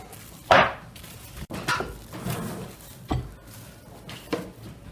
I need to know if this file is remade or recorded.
recorded